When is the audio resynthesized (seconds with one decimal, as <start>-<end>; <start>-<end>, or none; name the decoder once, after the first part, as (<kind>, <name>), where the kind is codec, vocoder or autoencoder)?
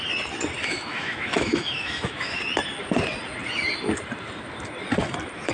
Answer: 0.6-2.4 (autoencoder, DAC-VAE)